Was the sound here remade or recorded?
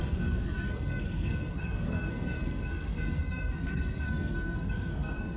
remade